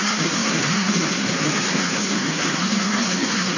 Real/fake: fake